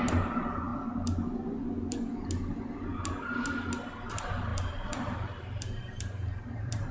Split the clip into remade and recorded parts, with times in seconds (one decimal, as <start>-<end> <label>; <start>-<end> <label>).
0.0-0.7 remade; 0.7-4.1 recorded; 4.1-6.9 remade